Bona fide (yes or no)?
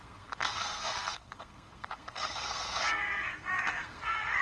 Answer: no